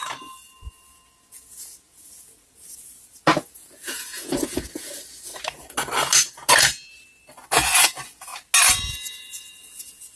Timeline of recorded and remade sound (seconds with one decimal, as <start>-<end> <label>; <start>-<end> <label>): 0.0-5.3 remade; 5.3-7.8 recorded; 7.8-8.3 remade; 8.3-9.1 recorded; 9.1-10.2 remade